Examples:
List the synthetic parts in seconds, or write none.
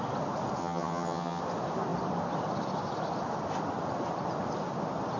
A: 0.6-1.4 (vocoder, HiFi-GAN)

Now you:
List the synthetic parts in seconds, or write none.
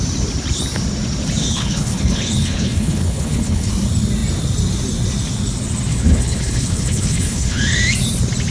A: 1.4-3.7 (codec, HILCodec); 5.9-7.6